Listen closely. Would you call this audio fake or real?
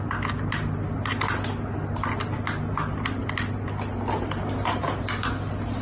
real